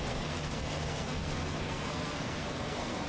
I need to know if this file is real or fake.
fake